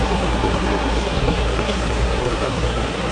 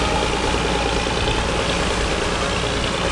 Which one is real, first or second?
second